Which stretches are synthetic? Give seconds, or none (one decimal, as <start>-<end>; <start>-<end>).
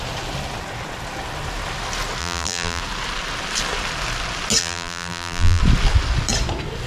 2.2-2.8; 4.6-5.6